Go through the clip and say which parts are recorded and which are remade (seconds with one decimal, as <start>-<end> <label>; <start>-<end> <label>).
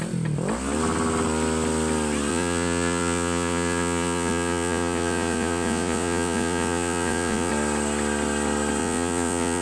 0.0-2.3 recorded; 2.3-7.5 remade; 7.5-8.8 recorded; 8.8-9.6 remade